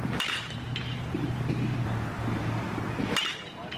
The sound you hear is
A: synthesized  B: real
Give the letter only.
B